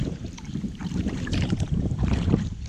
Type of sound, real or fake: fake